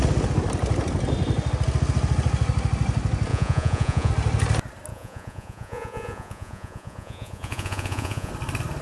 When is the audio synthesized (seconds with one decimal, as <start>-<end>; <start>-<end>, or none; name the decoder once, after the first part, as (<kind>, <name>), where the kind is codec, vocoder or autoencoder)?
3.3-4.1 (vocoder, Vocos); 4.9-8.3